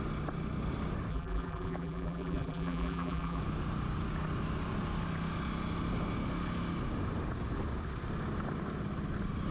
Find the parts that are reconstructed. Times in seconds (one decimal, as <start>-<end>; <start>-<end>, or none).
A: 1.1-3.4